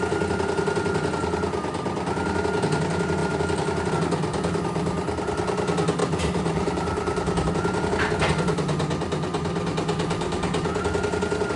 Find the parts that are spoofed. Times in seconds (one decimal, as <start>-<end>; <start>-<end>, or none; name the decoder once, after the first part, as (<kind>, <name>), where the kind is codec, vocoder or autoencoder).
3.2-3.9 (vocoder, BigVGAN v2); 6.0-7.5